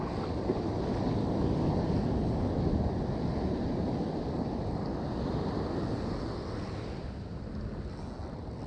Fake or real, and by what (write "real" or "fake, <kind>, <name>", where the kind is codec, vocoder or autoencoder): real